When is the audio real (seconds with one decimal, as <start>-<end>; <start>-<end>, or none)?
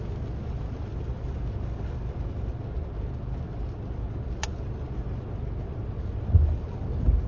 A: 0.0-7.3